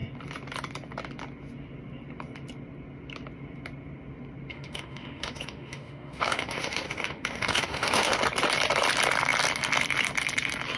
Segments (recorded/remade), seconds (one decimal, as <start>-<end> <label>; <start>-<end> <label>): 0.0-4.5 recorded; 4.5-8.2 remade; 8.2-10.8 recorded